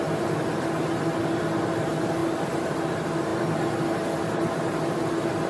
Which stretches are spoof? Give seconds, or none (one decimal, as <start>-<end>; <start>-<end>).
none